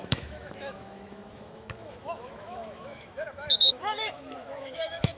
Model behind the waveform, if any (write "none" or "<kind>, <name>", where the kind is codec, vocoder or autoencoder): autoencoder, DAC-VAE